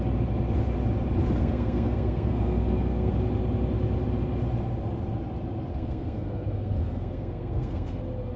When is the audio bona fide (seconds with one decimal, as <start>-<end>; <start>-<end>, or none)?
0.0-1.4; 3.1-5.7; 8.0-8.4